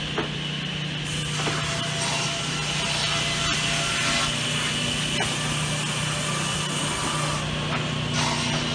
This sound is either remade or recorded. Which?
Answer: recorded